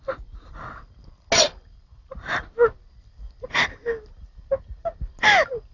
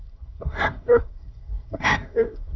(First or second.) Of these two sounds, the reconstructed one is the second